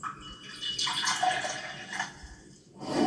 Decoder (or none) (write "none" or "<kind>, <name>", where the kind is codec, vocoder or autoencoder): none